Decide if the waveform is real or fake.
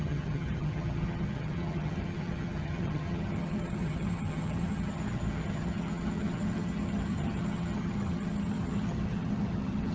fake